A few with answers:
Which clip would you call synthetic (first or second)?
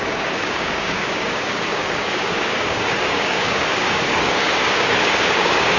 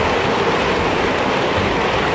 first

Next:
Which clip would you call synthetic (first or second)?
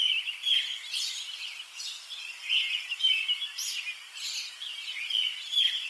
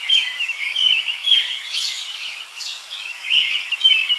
second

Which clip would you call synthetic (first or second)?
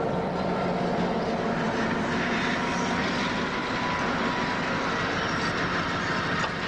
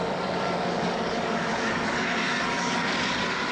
second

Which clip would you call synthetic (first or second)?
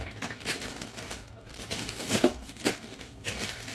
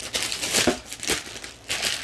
first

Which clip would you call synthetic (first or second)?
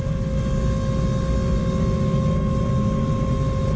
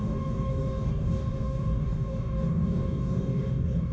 second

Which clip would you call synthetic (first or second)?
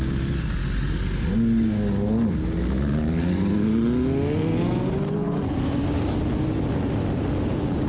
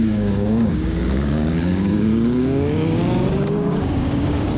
second